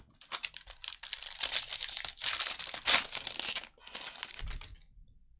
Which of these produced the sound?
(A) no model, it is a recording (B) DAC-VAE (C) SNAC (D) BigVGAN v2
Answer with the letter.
A